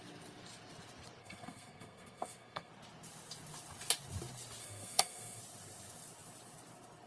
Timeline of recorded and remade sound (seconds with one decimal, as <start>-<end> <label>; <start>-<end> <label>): 0.0-1.2 recorded; 1.2-2.7 remade; 2.7-4.6 recorded; 4.6-5.4 remade; 5.4-7.1 recorded